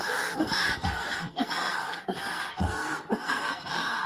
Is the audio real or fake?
fake